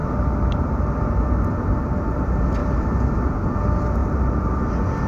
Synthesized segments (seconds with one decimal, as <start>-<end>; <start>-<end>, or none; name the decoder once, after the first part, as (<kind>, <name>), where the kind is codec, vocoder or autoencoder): 2.6-3.3 (vocoder, BigVGAN v2); 4.0-4.6